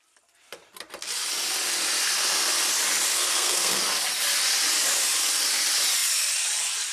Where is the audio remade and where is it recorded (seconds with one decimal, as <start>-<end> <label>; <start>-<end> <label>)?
0.0-3.1 recorded; 3.1-3.8 remade; 3.8-6.9 recorded